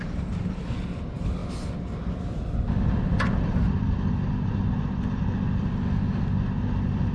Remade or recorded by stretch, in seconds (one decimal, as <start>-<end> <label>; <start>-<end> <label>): 0.0-7.1 recorded